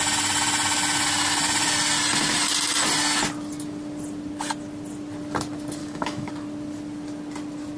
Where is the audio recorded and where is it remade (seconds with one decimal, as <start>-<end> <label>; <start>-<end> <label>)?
0.0-5.8 recorded; 5.8-6.3 remade; 6.3-7.8 recorded